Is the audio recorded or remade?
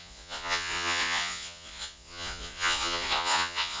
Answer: remade